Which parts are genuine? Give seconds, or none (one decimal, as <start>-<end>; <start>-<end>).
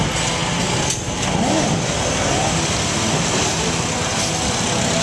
0.0-5.0